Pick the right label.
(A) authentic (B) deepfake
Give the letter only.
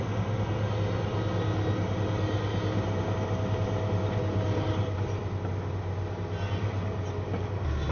A